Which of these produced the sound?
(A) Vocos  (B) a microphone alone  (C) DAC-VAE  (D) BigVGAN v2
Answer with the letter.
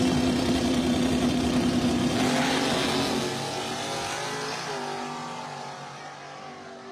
B